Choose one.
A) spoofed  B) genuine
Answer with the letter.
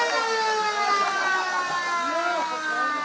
B